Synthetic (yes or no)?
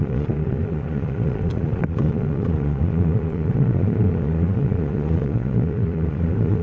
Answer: yes